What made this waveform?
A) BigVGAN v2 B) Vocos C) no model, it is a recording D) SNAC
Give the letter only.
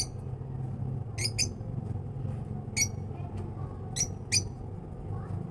C